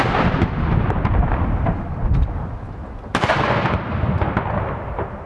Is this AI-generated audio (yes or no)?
no